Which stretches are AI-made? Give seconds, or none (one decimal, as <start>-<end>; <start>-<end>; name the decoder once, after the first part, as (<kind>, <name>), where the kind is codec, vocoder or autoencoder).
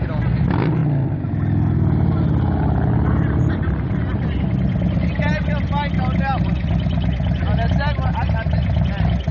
none